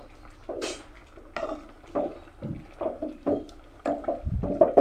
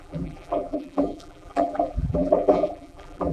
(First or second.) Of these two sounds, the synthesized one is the second